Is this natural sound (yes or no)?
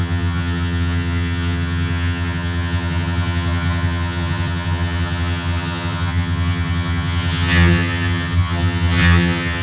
no